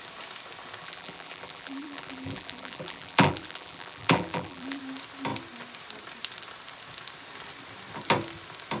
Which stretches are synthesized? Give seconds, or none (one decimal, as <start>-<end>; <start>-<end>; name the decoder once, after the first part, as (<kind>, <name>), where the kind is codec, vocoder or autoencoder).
0.8-4.8 (vocoder, BigVGAN v2)